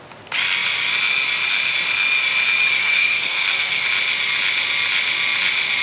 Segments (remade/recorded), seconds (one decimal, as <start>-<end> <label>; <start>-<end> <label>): 0.0-2.8 recorded; 2.8-3.8 remade; 3.8-5.8 recorded